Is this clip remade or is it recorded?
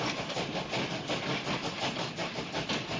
recorded